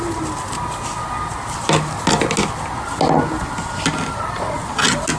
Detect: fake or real real